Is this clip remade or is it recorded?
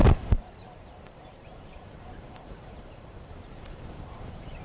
remade